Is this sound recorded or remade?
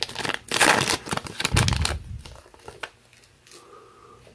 recorded